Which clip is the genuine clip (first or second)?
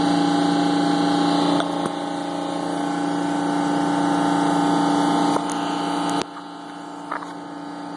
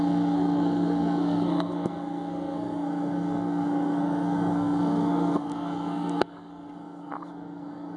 first